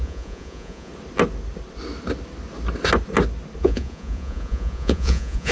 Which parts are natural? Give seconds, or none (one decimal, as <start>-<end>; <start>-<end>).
0.9-3.6